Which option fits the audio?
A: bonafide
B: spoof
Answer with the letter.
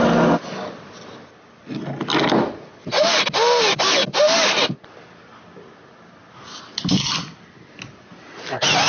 A